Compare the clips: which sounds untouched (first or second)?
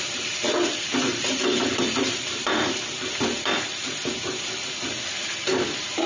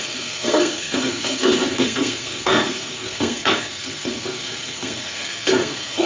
first